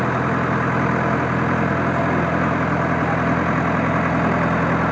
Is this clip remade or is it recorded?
recorded